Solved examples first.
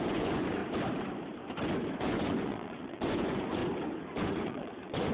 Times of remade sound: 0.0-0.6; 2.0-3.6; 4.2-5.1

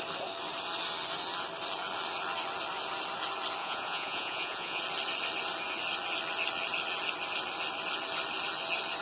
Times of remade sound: 3.6-4.8

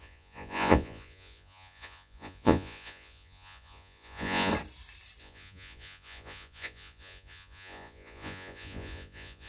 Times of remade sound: 0.0-4.5; 5.2-9.5

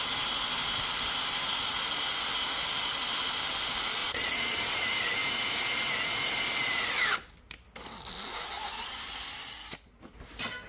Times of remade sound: 4.0-4.6